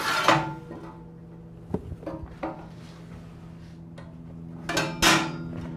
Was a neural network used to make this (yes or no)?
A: no